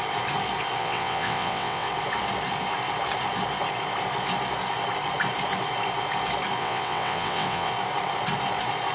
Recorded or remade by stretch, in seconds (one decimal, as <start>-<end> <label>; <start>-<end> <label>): 0.0-0.8 recorded; 0.8-1.9 remade; 1.9-6.6 recorded; 6.6-7.7 remade; 7.7-8.9 recorded

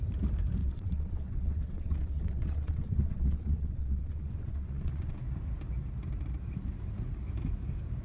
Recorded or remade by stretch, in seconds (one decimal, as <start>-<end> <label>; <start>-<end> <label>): 0.0-0.6 recorded; 0.6-5.2 remade; 5.2-8.0 recorded

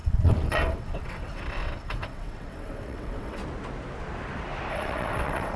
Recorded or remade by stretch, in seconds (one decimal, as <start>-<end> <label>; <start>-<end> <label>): 0.0-3.4 remade; 3.4-4.7 recorded; 4.7-5.6 remade

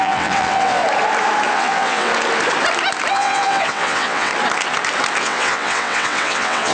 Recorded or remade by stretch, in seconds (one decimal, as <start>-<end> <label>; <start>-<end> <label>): 0.0-0.8 remade; 0.8-1.5 recorded; 1.5-2.1 remade; 2.1-3.1 recorded; 3.1-4.3 remade; 4.3-5.2 recorded; 5.2-6.7 remade